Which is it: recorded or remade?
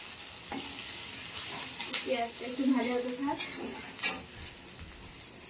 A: recorded